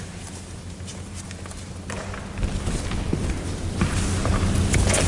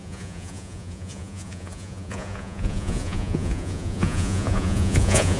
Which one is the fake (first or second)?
second